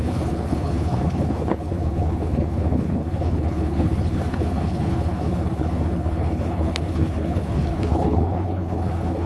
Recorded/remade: remade